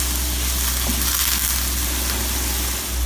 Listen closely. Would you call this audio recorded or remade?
recorded